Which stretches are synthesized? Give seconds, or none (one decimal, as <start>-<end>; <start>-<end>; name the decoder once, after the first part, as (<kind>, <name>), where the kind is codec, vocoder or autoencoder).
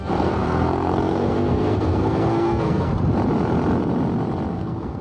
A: 0.0-2.9 (codec, SNAC); 4.5-5.0